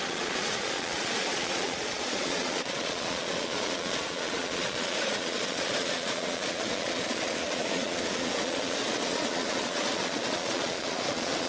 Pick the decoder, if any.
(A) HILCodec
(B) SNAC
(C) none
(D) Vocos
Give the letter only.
D